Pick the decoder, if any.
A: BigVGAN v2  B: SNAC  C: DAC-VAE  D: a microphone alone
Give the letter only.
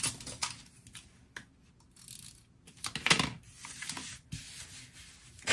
D